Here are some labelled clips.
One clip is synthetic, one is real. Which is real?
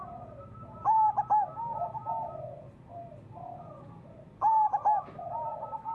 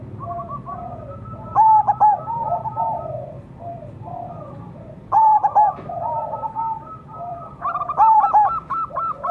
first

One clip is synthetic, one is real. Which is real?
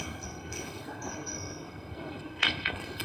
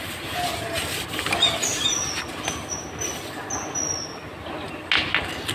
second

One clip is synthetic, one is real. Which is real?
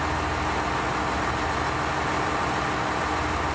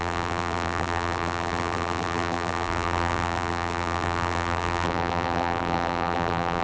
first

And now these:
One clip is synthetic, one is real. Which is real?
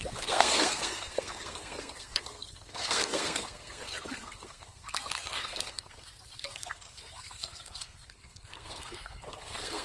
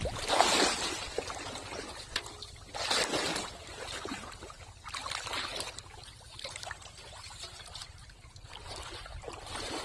second